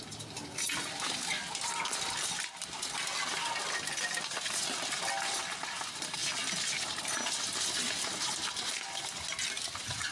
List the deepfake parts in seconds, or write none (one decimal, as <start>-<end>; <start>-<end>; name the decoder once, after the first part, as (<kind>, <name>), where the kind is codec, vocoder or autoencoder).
none